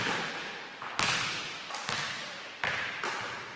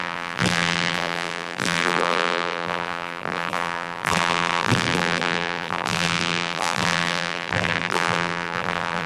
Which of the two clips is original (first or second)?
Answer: first